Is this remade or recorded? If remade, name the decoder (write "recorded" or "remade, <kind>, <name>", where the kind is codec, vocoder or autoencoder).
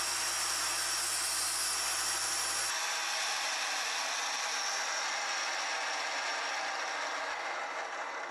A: recorded